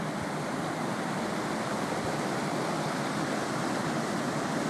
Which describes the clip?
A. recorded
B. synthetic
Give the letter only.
A